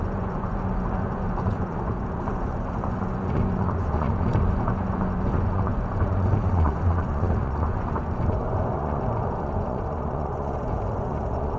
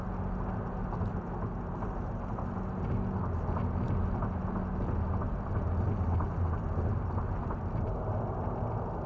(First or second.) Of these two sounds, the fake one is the first